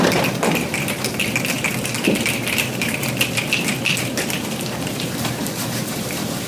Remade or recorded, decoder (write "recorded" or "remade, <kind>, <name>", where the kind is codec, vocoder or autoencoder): remade, vocoder, BigVGAN v2